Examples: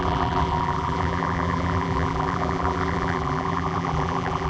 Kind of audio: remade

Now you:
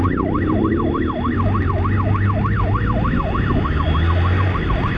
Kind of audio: recorded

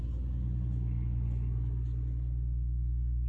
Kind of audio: recorded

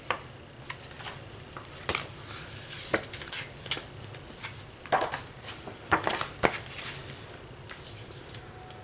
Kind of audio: recorded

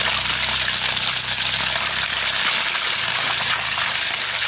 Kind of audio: recorded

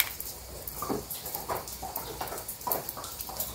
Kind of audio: recorded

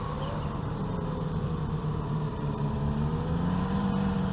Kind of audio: remade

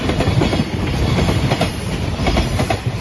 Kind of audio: recorded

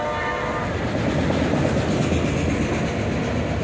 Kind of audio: recorded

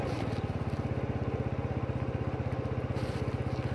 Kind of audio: remade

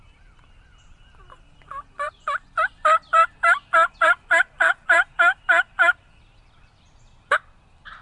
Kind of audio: remade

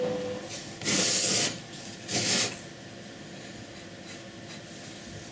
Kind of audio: recorded